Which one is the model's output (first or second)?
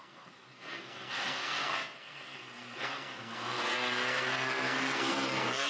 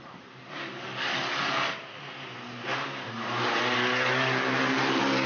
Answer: first